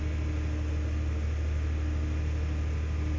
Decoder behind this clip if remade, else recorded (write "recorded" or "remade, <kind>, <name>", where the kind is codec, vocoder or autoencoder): recorded